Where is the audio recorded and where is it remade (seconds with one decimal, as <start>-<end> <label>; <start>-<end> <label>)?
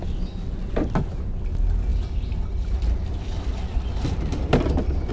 0.0-1.9 recorded; 1.9-5.1 remade